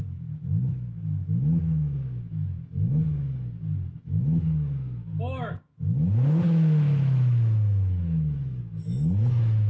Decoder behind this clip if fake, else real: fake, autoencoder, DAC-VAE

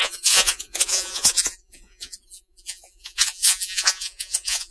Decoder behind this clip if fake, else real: fake, vocoder, Vocos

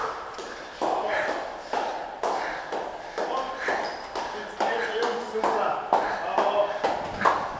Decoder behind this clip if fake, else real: real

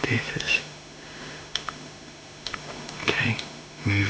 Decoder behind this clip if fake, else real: fake, autoencoder, DAC-VAE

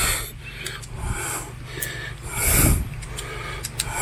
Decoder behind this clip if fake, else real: real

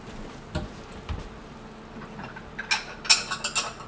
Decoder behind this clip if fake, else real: real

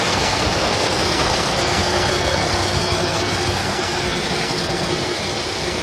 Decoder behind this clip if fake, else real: fake, codec, SNAC